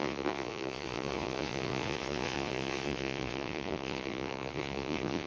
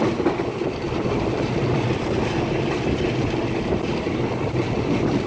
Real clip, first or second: second